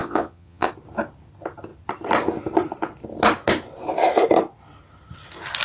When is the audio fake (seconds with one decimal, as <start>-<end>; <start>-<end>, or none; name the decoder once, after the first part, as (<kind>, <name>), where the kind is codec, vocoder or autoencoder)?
0.0-0.7 (vocoder, Vocos)